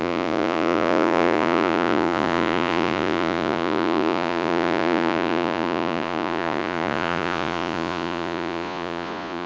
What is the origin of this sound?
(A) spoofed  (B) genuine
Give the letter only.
A